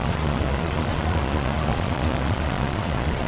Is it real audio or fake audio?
fake